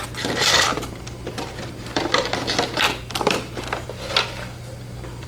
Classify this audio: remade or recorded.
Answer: remade